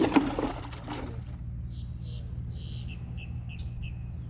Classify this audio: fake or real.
real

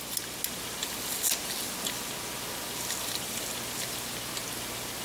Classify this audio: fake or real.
real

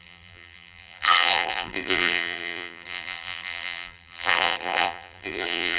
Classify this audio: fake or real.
fake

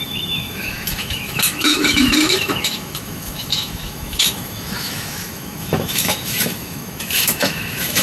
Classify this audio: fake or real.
fake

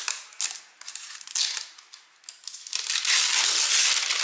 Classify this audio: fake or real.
real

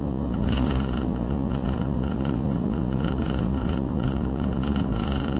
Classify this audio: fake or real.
fake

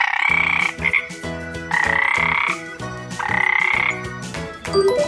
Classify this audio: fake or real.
real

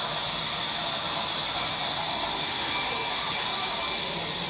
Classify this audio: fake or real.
real